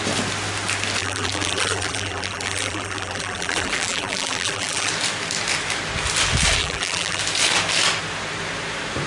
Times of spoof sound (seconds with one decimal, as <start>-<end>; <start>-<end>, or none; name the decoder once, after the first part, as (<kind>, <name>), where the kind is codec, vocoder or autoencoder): 1.0-4.9 (vocoder, BigVGAN v2); 6.6-7.2